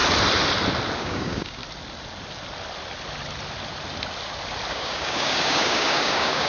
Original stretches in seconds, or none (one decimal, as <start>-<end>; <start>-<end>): 0.0-1.0; 1.6-4.7